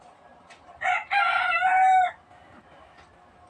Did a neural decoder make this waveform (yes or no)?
no